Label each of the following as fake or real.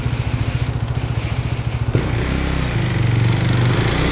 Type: real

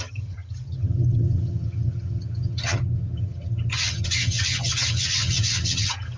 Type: fake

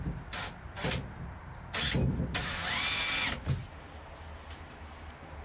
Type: real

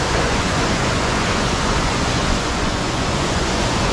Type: fake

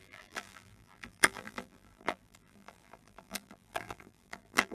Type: fake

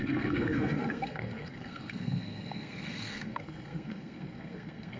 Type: fake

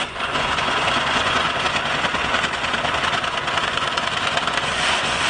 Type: fake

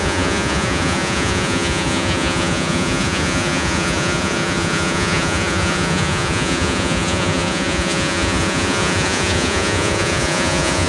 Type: fake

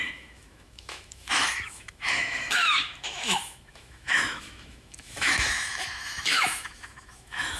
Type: fake